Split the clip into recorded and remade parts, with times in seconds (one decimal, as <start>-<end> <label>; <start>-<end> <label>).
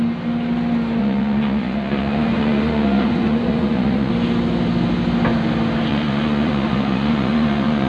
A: 0.0-1.0 recorded; 1.0-4.1 remade; 4.1-5.9 recorded; 5.9-7.9 remade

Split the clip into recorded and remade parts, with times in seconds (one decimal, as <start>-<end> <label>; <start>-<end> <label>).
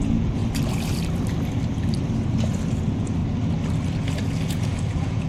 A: 0.0-0.4 remade; 0.4-2.8 recorded; 2.8-3.2 remade; 3.2-4.2 recorded; 4.2-5.3 remade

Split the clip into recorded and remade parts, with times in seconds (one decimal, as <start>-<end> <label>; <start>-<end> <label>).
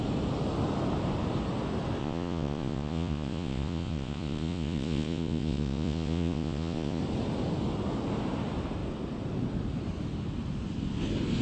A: 0.0-2.0 recorded; 2.0-7.0 remade; 7.0-11.4 recorded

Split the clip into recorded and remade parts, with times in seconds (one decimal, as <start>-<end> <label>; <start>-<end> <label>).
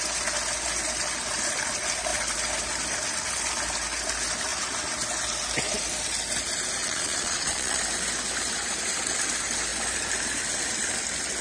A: 0.0-6.8 recorded; 6.8-7.8 remade; 7.8-11.4 recorded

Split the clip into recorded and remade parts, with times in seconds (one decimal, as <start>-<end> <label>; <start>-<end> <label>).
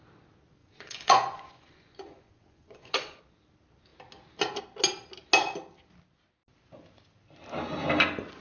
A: 0.0-0.6 recorded; 0.6-3.2 remade; 3.2-8.4 recorded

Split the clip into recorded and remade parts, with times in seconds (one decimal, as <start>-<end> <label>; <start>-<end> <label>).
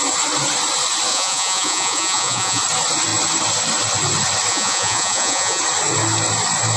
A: 0.0-1.1 recorded; 1.1-2.6 remade; 2.6-4.5 recorded; 4.5-5.6 remade; 5.6-6.8 recorded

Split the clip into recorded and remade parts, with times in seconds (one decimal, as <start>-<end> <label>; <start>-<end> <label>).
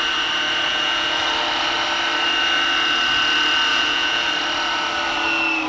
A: 0.0-0.7 recorded; 0.7-1.2 remade; 1.2-3.7 recorded; 3.7-4.3 remade; 4.3-5.7 recorded